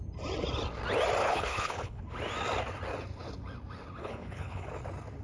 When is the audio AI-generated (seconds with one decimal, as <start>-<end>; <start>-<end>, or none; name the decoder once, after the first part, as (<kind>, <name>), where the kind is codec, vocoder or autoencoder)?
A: 1.2-2.0 (codec, HILCodec); 4.0-4.7